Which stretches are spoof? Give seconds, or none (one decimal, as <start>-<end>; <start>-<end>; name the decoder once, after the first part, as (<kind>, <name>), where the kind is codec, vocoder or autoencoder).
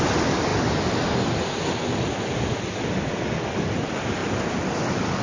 none